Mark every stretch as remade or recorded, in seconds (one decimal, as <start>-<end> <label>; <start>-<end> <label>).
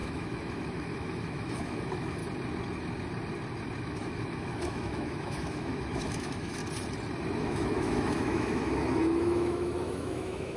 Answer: 0.0-2.2 remade; 2.2-3.8 recorded; 3.8-6.6 remade; 6.6-7.4 recorded; 7.4-10.6 remade